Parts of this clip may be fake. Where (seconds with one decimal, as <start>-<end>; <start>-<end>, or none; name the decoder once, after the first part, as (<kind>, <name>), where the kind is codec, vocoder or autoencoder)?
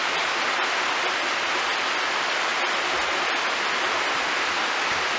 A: none